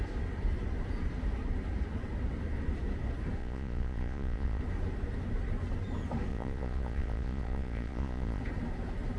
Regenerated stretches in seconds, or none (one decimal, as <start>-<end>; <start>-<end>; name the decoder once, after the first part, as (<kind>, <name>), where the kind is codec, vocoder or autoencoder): 3.4-4.6 (vocoder, Vocos); 6.3-8.4